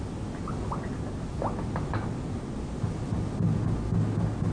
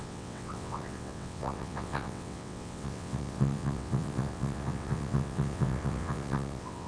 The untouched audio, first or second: first